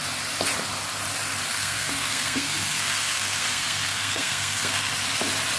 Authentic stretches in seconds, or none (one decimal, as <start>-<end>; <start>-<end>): 0.0-1.5; 4.9-5.6